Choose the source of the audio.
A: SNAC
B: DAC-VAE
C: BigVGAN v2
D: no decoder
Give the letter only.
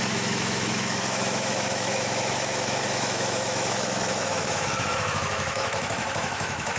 B